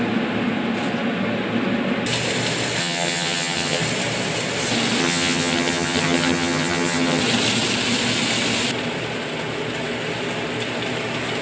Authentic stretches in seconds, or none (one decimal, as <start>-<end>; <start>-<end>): 0.0-2.8; 3.8-5.0; 7.2-11.4